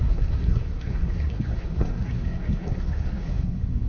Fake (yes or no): yes